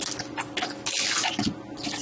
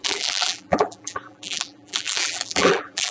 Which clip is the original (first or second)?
first